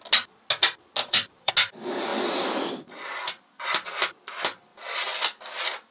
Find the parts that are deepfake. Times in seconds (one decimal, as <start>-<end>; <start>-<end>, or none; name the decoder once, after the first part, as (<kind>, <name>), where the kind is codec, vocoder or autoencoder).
1.0-1.5 (vocoder, BigVGAN v2)